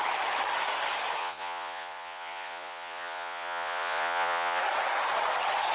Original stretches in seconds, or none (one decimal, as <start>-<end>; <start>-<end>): 0.0-1.2; 4.6-5.7